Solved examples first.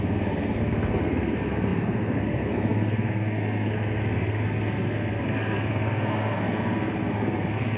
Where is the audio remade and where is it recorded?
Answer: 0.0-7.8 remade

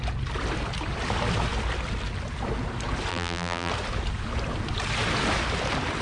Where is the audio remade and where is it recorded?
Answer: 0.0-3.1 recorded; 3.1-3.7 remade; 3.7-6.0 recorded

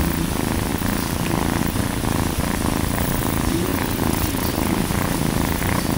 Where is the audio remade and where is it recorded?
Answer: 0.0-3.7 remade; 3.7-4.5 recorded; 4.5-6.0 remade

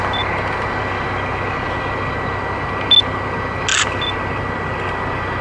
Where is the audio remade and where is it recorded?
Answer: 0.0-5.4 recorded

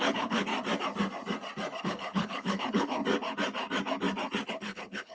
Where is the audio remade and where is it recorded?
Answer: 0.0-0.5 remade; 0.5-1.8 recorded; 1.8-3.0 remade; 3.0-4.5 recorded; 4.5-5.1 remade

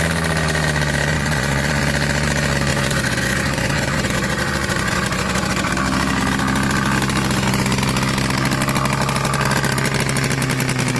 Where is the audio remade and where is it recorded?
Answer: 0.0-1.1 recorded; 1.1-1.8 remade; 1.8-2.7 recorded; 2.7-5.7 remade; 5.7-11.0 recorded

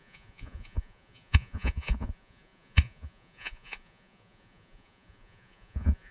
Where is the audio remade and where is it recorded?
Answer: 0.0-6.1 remade